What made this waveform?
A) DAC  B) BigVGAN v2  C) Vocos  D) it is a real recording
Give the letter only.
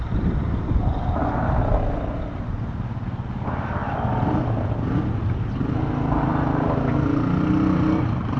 D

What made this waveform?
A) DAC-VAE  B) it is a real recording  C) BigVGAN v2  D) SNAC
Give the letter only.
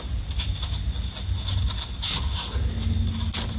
B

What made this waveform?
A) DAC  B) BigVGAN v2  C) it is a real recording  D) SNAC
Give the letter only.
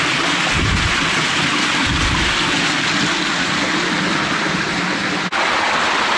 C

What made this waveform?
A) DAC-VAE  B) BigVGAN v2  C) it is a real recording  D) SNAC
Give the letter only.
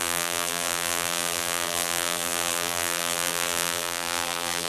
B